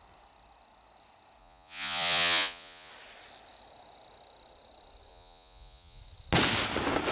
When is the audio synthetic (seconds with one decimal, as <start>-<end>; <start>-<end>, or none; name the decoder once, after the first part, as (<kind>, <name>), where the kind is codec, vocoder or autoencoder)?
1.4-2.9 (vocoder, Vocos); 5.1-6.0